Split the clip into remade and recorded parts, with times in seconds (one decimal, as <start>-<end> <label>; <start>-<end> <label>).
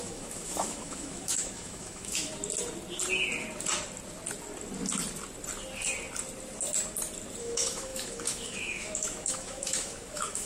0.0-2.3 remade; 2.3-7.4 recorded; 7.4-10.5 remade